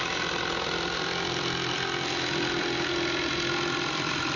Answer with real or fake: real